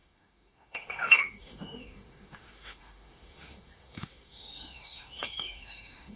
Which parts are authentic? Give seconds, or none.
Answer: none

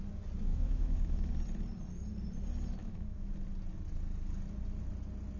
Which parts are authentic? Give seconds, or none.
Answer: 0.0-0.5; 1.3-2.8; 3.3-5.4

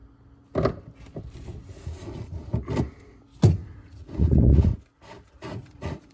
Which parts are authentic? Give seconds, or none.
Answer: 0.0-1.7; 2.4-3.5; 4.7-5.3